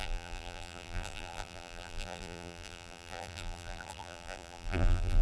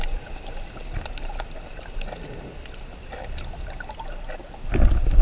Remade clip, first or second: first